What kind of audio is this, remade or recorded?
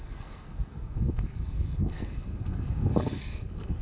remade